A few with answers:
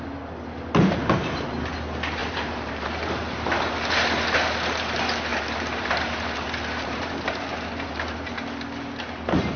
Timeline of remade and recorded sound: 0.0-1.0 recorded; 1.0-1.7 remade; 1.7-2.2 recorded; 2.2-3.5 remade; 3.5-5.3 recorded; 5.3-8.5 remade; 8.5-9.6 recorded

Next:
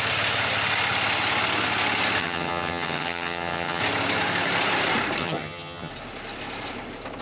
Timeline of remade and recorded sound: 0.0-2.2 recorded; 2.2-3.8 remade; 3.8-5.2 recorded; 5.2-5.9 remade; 5.9-7.2 recorded

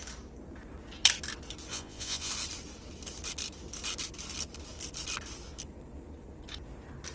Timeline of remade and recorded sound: 0.0-1.7 recorded; 1.7-2.3 remade; 2.3-7.1 recorded